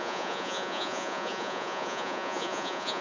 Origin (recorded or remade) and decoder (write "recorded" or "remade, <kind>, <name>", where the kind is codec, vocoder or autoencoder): remade, vocoder, Vocos